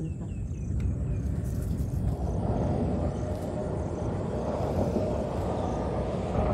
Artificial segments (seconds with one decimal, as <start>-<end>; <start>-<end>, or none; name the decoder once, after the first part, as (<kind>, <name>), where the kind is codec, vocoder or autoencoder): 0.0-2.5 (vocoder, BigVGAN v2); 3.6-4.6